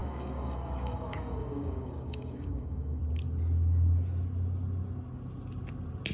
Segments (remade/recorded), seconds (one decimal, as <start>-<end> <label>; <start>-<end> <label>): 0.0-3.0 remade; 3.0-6.1 recorded